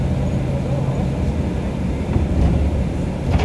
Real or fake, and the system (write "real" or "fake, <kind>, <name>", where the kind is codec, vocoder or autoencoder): real